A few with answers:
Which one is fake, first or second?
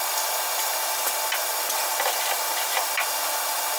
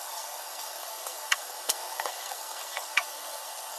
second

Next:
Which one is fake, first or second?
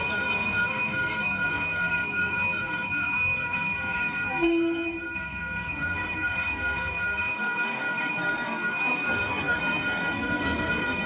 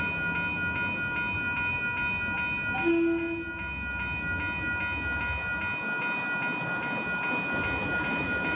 first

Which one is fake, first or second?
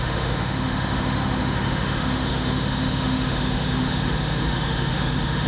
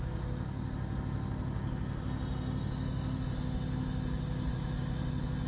first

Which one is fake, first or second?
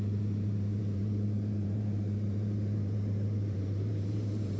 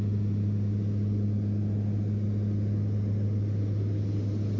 first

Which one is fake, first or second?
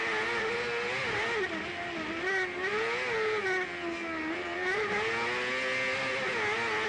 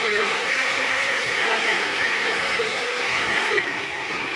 second